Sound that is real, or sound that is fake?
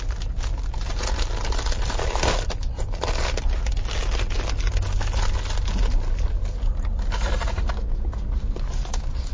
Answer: real